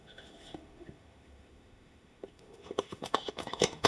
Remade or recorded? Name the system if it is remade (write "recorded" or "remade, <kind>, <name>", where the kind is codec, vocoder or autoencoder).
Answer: remade, autoencoder, DAC-VAE